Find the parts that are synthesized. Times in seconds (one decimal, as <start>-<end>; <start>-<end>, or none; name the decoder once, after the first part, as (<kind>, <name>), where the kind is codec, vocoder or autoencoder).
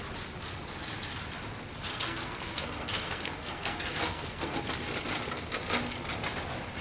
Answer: 1.9-4.6 (codec, SNAC)